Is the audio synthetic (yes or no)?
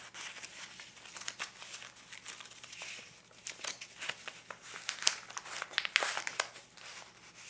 no